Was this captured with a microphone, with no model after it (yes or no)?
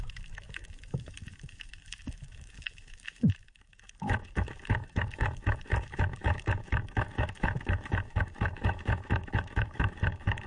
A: no